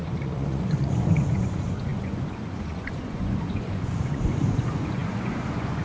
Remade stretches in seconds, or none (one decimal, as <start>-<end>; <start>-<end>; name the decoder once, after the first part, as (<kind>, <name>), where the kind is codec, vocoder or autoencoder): 0.0-5.8 (vocoder, Vocos)